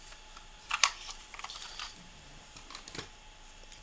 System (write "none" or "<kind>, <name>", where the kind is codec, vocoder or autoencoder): vocoder, BigVGAN v2